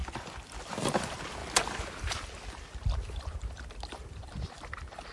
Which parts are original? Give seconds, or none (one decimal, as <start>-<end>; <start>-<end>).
0.0-5.1